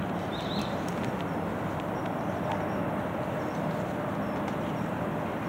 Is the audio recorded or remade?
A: recorded